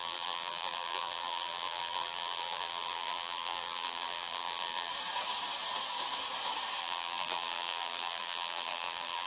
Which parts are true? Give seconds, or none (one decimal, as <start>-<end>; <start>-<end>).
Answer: 4.9-6.8